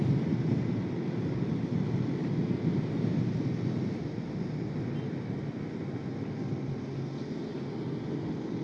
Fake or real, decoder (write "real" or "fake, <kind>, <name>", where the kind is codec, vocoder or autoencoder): real